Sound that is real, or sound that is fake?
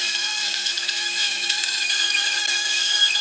fake